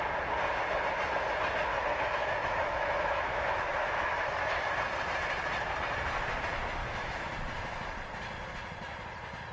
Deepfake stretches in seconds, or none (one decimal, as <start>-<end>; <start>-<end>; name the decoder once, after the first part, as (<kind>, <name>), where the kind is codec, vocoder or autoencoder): 1.7-4.7 (autoencoder, DAC-VAE); 6.8-7.3